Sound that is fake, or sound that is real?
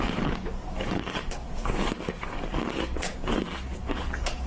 fake